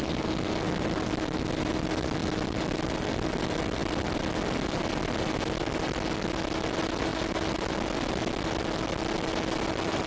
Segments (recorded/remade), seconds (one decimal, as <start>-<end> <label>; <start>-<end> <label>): 0.0-10.1 recorded